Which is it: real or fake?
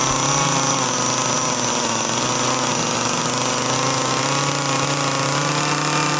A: real